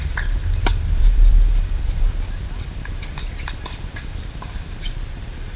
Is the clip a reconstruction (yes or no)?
yes